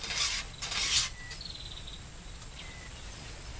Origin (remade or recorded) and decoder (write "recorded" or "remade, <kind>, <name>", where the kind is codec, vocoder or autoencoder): recorded